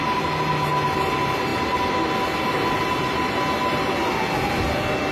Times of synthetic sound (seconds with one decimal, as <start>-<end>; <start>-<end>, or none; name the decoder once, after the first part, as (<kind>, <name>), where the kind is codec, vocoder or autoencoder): none